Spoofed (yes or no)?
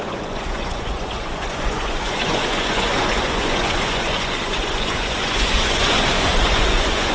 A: yes